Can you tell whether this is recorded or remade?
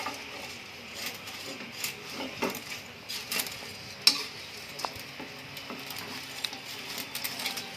recorded